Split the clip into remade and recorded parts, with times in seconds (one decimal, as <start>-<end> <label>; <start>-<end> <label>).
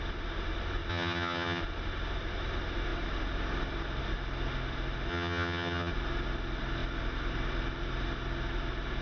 0.0-0.9 recorded; 0.9-1.6 remade; 1.6-5.1 recorded; 5.1-5.9 remade; 5.9-9.0 recorded